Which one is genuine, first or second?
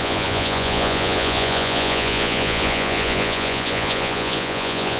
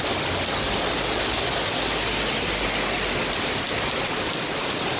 second